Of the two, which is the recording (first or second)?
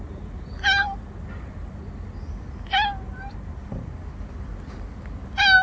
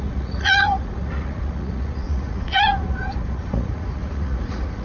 first